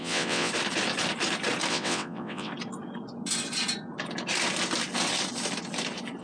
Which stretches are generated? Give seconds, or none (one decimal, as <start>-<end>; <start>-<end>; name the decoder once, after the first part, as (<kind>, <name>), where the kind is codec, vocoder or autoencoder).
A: 0.0-0.5 (vocoder, WaveNeXt); 1.7-2.5